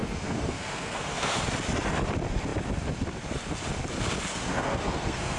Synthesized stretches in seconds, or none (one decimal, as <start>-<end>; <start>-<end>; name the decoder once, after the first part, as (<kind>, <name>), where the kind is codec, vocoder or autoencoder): 0.0-1.4 (codec, SNAC); 4.3-5.4